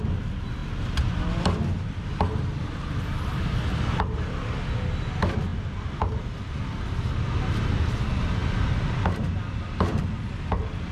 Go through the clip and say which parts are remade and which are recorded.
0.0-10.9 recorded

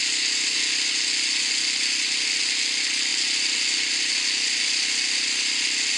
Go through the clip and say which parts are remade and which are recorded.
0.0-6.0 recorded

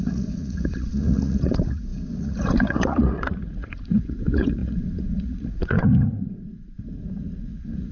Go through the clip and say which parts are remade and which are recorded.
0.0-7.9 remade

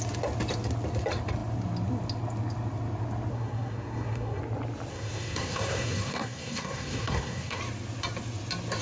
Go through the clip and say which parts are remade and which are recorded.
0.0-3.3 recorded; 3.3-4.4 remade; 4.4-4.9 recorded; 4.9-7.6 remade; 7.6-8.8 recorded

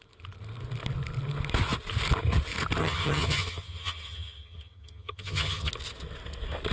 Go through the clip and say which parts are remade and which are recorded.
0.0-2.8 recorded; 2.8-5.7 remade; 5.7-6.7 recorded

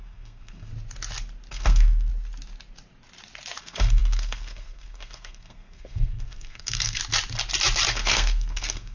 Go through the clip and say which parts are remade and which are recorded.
0.0-0.7 remade; 0.7-1.5 recorded; 1.5-2.1 remade; 2.1-3.6 recorded; 3.6-7.0 remade; 7.0-7.9 recorded; 7.9-8.9 remade

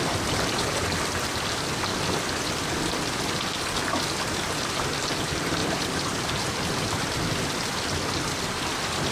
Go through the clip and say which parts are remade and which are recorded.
0.0-5.6 recorded; 5.6-7.5 remade; 7.5-9.1 recorded